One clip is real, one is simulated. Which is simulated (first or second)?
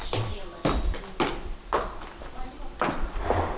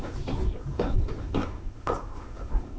second